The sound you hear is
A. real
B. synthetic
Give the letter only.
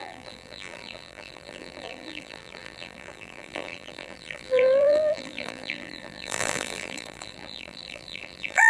B